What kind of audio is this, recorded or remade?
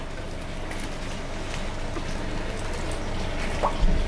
recorded